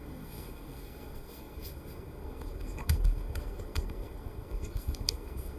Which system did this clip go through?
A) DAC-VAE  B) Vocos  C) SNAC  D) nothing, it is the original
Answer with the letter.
C